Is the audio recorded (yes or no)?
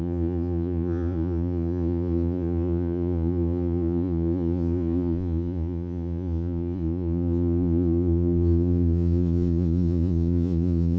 no